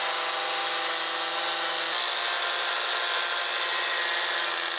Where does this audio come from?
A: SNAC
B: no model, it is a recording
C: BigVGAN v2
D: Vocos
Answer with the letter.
B